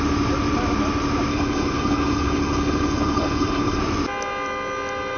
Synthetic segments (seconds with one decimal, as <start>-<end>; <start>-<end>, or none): 1.3-3.8